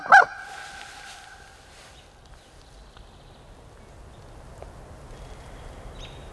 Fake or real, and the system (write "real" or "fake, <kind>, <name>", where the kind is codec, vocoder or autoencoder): real